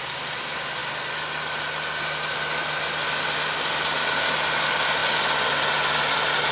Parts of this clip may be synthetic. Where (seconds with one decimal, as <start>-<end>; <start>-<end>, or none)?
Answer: none